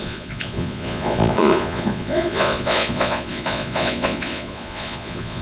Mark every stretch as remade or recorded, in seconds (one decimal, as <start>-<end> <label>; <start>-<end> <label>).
0.0-5.4 remade